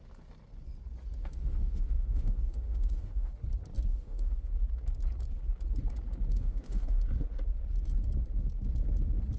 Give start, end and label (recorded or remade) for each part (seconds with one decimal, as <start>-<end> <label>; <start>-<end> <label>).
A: 0.0-1.2 recorded; 1.2-3.3 remade; 3.3-3.9 recorded; 3.9-4.5 remade; 4.5-6.3 recorded; 6.3-7.0 remade; 7.0-9.4 recorded

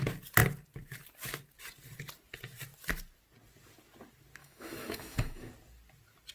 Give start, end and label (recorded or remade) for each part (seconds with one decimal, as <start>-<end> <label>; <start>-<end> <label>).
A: 0.0-4.4 recorded; 4.4-5.5 remade; 5.5-6.3 recorded

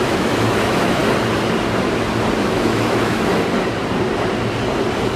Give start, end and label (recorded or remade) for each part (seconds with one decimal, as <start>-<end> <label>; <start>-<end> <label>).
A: 0.0-1.0 remade; 1.0-2.4 recorded; 2.4-3.3 remade; 3.3-5.2 recorded

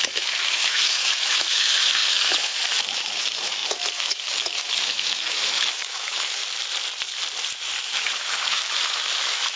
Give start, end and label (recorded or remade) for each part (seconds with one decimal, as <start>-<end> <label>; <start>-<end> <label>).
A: 0.0-6.4 remade; 6.4-7.8 recorded; 7.8-9.6 remade

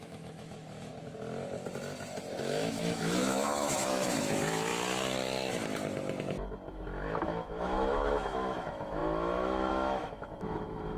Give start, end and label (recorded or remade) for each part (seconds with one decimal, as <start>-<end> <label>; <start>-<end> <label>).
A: 0.0-0.9 remade; 0.9-2.4 recorded; 2.4-4.7 remade; 4.7-6.7 recorded; 6.7-11.0 remade